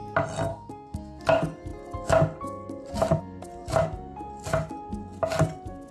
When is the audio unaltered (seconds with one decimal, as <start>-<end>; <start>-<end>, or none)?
0.0-0.5; 1.2-5.9